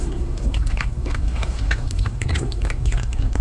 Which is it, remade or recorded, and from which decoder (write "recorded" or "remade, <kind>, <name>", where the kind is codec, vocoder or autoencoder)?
remade, codec, SNAC